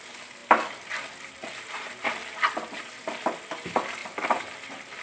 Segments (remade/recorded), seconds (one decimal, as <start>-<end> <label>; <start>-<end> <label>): 0.0-0.4 recorded; 0.4-3.4 remade; 3.4-4.0 recorded; 4.0-5.0 remade